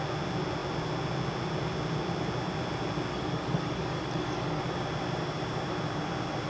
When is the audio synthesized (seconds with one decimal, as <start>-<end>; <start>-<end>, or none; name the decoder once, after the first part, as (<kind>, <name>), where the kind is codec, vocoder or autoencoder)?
3.1-4.6 (codec, DAC)